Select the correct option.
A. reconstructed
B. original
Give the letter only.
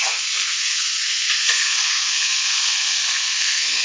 A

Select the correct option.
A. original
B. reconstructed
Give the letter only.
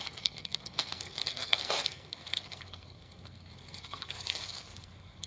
B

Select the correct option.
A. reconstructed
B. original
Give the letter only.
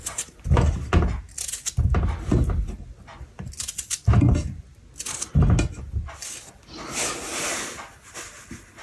B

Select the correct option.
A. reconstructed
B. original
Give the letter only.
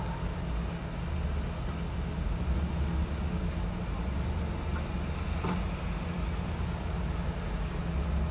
B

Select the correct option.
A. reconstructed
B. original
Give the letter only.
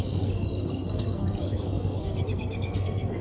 A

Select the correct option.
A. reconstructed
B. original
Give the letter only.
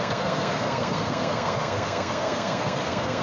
A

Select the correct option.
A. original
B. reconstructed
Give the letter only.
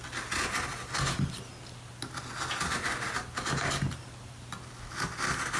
A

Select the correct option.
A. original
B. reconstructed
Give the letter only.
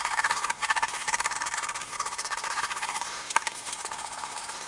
B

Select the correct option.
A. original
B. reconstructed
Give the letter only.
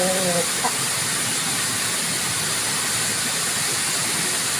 A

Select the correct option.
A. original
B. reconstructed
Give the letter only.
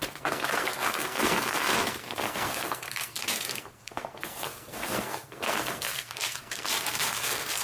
B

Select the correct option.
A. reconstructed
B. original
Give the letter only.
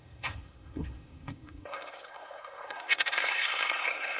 A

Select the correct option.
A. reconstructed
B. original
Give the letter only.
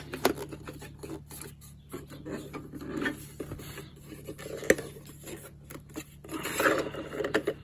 B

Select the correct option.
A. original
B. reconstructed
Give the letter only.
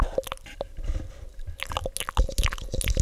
A